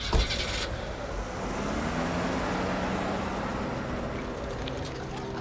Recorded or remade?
recorded